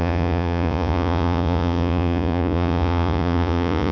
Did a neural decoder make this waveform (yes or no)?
yes